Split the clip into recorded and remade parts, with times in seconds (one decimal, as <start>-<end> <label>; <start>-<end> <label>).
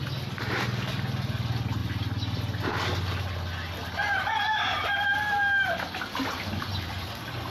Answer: 0.0-7.5 recorded